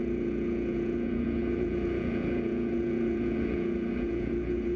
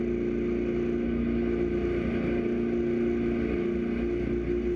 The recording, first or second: second